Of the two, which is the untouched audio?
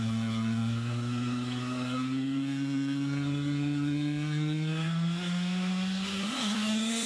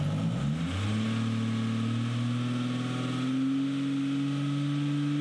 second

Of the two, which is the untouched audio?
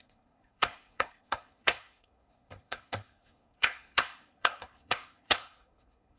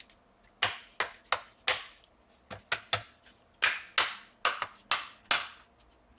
second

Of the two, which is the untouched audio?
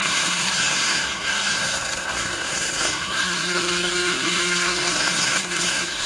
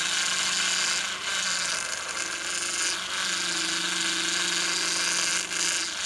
second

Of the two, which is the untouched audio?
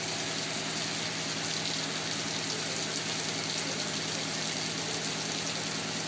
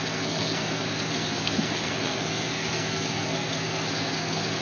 first